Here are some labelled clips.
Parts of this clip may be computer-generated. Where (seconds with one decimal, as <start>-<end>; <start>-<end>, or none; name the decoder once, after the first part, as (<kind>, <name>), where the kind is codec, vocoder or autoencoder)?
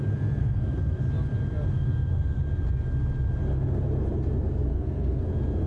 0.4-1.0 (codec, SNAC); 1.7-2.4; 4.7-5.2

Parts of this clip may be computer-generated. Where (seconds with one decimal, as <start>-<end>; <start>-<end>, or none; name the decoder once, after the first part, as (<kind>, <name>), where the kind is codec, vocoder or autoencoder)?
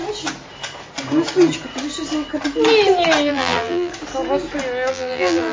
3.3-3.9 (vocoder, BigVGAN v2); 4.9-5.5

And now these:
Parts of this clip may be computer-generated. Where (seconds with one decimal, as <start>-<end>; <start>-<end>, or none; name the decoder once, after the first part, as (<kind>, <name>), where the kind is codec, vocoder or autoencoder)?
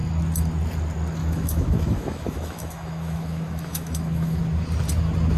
1.2-4.4 (autoencoder, DAC-VAE)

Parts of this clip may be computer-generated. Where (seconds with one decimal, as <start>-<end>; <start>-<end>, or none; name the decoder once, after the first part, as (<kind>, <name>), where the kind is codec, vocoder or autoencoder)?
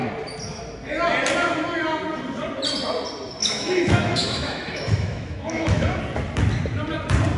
3.4-6.0 (autoencoder, DAC-VAE)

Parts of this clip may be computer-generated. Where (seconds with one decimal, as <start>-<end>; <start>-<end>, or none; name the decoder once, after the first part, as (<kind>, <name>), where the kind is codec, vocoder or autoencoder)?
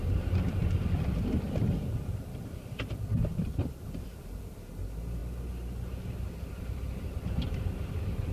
0.6-4.4 (vocoder, BigVGAN v2)